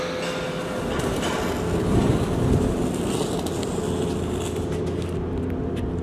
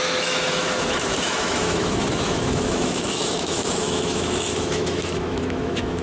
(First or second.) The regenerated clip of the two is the second